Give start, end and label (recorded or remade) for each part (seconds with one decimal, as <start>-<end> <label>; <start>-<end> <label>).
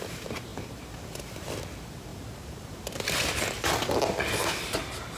0.0-2.1 remade; 2.1-5.2 recorded